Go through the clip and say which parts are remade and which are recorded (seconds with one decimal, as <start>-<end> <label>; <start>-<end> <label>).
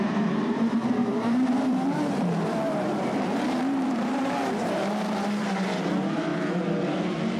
0.0-6.3 remade; 6.3-7.4 recorded